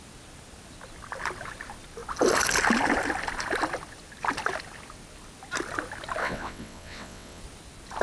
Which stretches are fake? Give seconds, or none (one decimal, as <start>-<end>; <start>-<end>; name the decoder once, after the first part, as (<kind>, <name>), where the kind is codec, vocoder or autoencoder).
6.2-7.4 (vocoder, WaveNeXt)